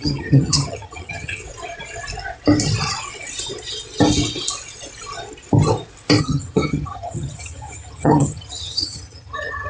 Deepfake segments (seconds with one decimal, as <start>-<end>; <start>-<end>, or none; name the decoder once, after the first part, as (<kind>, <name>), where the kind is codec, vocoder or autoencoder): 0.0-1.4 (vocoder, HiFi-GAN); 6.2-9.7